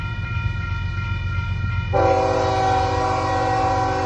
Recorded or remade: recorded